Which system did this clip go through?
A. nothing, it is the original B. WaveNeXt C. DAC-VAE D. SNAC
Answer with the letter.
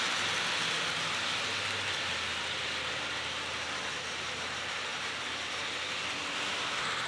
A